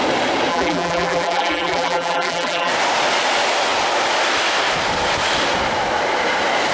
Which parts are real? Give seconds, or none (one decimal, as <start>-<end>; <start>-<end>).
0.0-0.5; 2.7-6.7